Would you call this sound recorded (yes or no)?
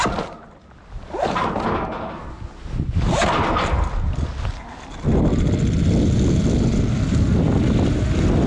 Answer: yes